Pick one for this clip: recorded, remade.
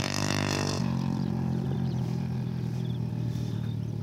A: remade